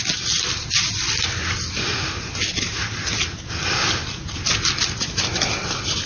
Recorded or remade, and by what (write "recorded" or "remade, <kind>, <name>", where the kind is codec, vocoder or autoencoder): recorded